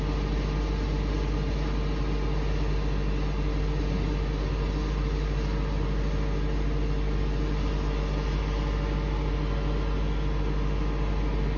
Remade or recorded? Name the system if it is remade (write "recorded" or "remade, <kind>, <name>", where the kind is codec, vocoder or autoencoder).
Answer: recorded